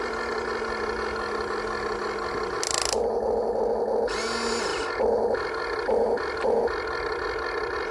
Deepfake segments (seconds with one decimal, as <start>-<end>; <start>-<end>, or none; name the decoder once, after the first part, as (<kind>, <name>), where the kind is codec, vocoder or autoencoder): none